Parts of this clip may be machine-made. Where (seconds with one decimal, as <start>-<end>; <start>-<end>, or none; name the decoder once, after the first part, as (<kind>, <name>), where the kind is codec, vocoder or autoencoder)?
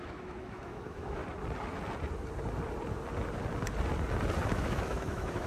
0.0-1.2 (autoencoder, DAC-VAE); 4.5-5.5